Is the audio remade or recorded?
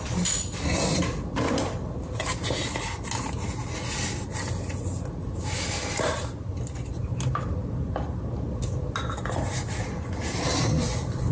recorded